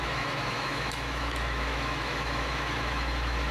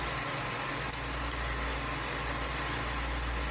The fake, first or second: first